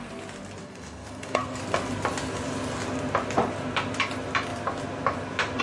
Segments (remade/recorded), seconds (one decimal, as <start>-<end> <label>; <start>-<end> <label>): 0.0-0.6 recorded; 0.6-1.6 remade; 1.6-5.6 recorded